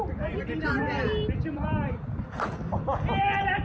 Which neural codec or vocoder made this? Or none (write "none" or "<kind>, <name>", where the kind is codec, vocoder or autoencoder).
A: vocoder, BigVGAN v2